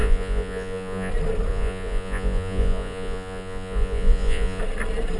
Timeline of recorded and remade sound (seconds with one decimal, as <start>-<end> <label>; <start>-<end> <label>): 0.0-1.1 remade; 1.1-1.5 recorded; 1.5-4.6 remade; 4.6-5.2 recorded